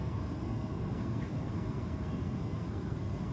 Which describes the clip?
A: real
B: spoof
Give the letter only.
B